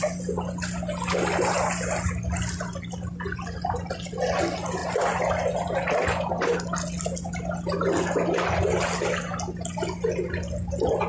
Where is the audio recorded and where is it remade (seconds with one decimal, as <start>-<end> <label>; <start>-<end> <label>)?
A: 0.0-11.1 recorded